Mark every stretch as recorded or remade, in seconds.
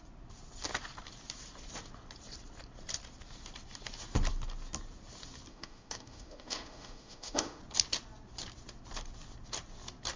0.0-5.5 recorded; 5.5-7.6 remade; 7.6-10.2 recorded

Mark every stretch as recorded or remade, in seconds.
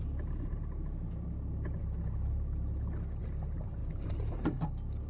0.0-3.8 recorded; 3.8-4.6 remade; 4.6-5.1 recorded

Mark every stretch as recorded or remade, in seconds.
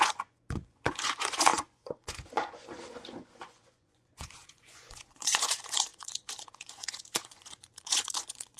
0.0-8.6 remade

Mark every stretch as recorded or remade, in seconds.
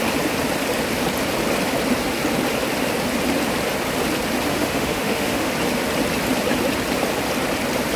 0.0-4.5 recorded; 4.5-5.5 remade; 5.5-8.0 recorded